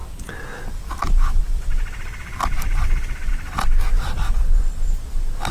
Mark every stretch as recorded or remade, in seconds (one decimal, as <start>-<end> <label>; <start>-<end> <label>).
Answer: 0.0-5.5 recorded